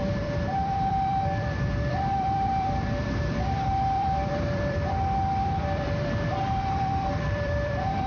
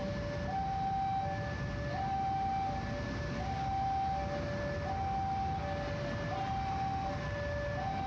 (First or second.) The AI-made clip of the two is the first